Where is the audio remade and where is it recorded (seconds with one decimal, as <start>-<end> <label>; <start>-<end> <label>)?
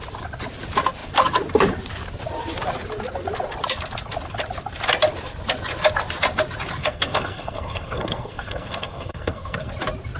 0.0-6.8 recorded; 6.8-9.7 remade; 9.7-10.2 recorded